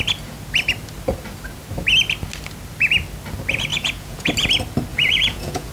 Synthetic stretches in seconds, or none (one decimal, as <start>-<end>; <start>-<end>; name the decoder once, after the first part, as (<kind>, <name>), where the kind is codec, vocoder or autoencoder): 3.7-4.3 (vocoder, Vocos); 4.9-5.7

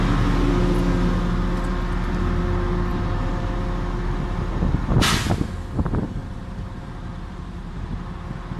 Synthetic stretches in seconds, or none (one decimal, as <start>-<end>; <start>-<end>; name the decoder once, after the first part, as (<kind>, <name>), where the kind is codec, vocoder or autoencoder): 2.9-3.5 (vocoder, BigVGAN v2); 6.2-7.8

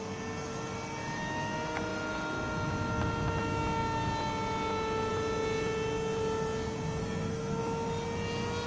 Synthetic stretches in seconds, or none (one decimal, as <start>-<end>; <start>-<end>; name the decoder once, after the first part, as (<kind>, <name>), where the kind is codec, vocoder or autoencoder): 7.0-7.6 (codec, SNAC)

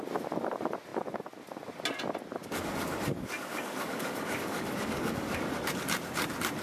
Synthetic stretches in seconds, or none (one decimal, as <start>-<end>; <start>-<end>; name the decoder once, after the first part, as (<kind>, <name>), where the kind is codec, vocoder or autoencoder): 2.4-5.5 (codec, DAC)

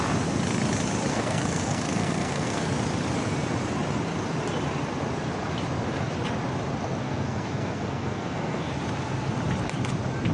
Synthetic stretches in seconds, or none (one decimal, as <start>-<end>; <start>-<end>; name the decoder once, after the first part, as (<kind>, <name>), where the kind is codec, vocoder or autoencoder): 1.1-2.6 (codec, SNAC); 7.0-8.7

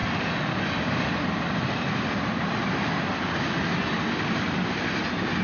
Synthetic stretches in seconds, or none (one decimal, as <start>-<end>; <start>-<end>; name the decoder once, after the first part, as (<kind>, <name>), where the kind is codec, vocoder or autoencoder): none

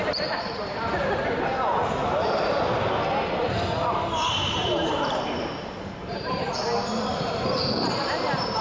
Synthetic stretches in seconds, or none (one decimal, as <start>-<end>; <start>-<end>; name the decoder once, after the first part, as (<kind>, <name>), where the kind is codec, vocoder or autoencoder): 0.0-1.0 (vocoder, BigVGAN v2); 4.5-6.5; 7.1-8.6